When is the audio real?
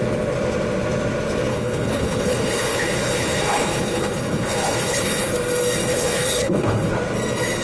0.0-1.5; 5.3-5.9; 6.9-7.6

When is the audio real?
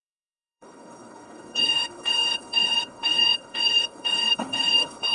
none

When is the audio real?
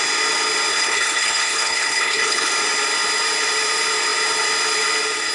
0.0-0.7; 2.5-5.3